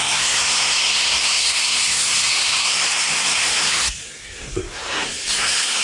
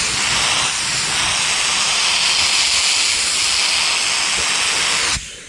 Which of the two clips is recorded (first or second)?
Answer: second